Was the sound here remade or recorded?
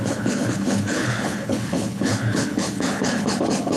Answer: remade